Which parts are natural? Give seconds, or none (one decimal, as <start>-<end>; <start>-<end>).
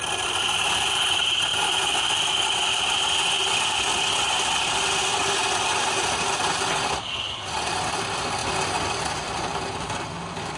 0.0-10.6